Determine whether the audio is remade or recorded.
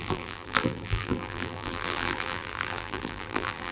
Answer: remade